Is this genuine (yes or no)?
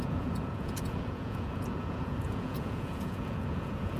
no